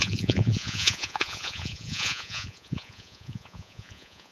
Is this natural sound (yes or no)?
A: no